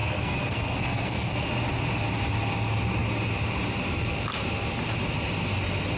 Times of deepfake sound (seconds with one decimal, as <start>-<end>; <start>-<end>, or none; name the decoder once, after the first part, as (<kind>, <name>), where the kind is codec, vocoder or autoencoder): 0.0-1.5 (codec, SNAC)